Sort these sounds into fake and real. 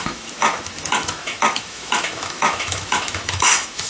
fake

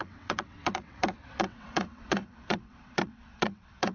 fake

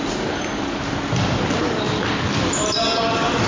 real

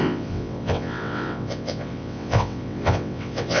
fake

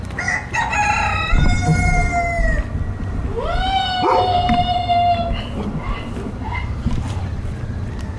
real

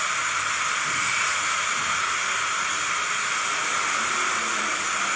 fake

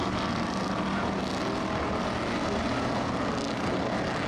real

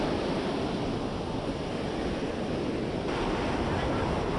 real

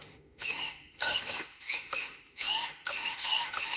fake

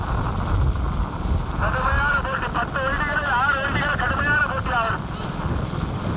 real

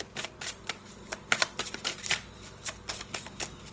real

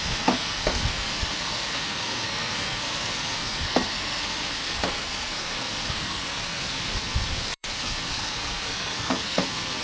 fake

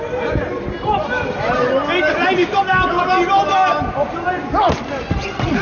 real